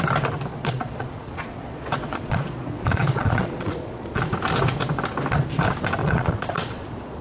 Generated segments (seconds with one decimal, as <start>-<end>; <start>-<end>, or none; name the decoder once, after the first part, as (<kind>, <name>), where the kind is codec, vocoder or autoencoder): 0.5-4.2 (vocoder, Vocos); 6.0-7.2